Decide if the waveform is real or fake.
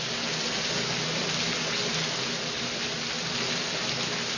real